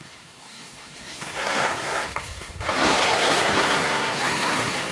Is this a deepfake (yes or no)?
yes